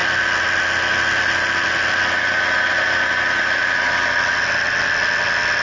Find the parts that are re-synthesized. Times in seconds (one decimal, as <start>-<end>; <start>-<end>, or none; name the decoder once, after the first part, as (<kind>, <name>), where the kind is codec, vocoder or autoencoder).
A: none